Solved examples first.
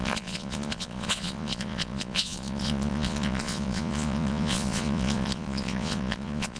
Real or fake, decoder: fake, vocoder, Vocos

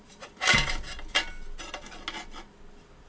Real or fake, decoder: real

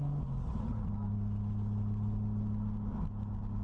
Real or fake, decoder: real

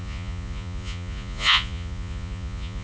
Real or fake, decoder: fake, vocoder, Vocos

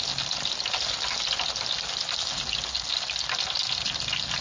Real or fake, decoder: real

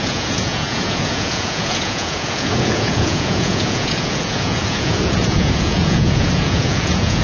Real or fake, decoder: fake, vocoder, Vocos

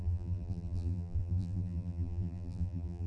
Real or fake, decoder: fake, vocoder, BigVGAN v2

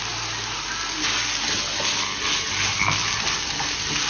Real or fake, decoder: real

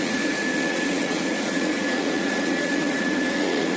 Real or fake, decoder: fake, vocoder, Vocos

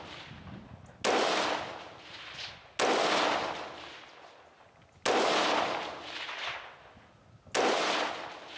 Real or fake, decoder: real